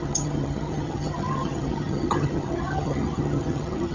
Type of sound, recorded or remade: remade